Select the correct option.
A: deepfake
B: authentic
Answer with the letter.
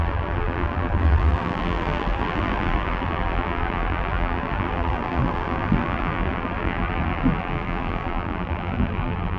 A